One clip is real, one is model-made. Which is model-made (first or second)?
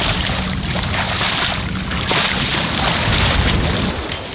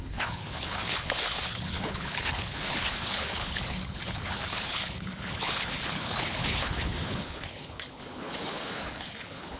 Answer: second